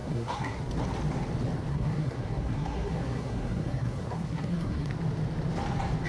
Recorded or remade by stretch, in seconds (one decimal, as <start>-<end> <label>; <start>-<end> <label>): 0.0-0.6 remade; 0.6-1.7 recorded; 1.7-4.9 remade; 4.9-6.1 recorded